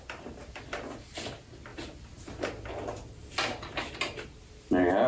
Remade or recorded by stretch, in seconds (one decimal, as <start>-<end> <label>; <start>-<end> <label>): 0.0-5.1 recorded